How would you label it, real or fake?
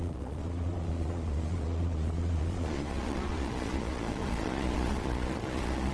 fake